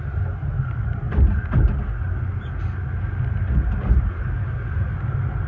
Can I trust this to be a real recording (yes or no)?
yes